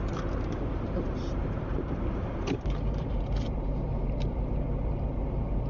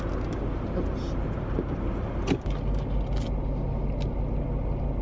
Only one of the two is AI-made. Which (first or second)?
first